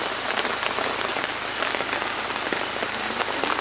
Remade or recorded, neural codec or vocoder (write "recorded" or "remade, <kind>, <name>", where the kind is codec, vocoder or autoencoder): recorded